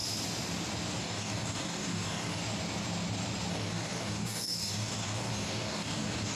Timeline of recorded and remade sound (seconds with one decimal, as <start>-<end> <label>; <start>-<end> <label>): 0.0-1.0 recorded; 1.0-2.4 remade; 2.4-3.5 recorded; 3.5-6.4 remade